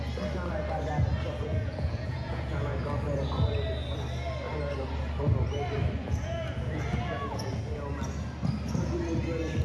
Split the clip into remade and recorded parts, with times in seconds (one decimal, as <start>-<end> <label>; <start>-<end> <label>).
0.0-1.4 recorded; 1.4-2.7 remade; 2.7-6.0 recorded; 6.0-7.6 remade; 7.6-9.6 recorded